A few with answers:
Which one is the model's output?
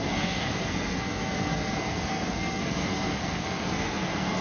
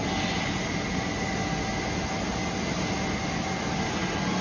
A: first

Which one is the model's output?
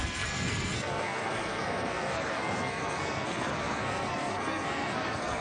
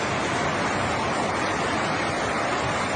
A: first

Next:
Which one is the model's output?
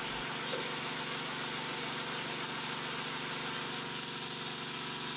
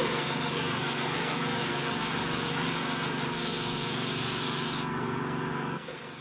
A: second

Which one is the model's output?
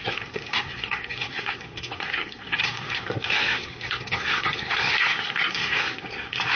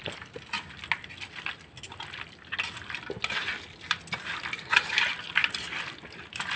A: first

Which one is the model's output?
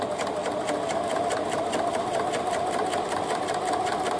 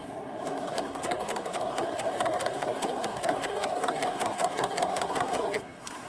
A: second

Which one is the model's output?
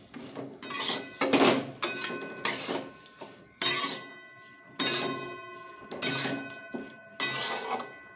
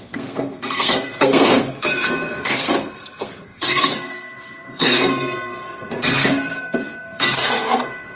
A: second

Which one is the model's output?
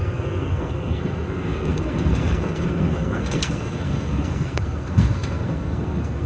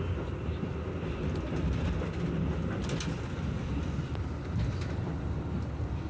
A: first